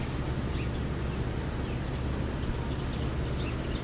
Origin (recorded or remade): recorded